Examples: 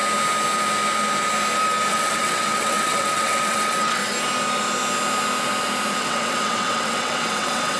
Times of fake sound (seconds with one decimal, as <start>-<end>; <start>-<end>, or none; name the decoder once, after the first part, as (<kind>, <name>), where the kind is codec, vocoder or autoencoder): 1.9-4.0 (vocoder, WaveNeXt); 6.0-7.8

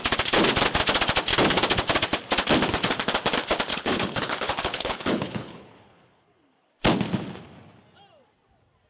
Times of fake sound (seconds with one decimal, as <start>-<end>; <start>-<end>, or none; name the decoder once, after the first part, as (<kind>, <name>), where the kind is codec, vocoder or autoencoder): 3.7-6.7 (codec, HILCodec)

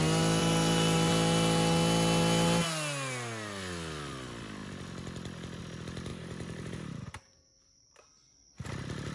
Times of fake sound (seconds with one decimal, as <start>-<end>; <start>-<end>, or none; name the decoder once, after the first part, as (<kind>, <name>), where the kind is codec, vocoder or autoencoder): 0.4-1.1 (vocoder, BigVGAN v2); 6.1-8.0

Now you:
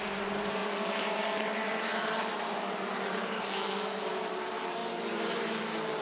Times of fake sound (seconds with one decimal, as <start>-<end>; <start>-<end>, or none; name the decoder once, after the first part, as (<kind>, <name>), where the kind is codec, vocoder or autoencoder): 0.0-4.8 (vocoder, BigVGAN v2); 5.3-6.0

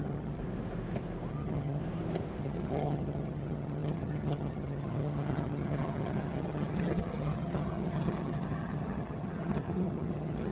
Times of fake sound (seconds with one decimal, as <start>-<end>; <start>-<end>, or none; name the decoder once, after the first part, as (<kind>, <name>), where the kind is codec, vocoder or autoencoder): 0.0-0.4 (vocoder, HiFi-GAN); 1.3-1.8; 2.4-10.5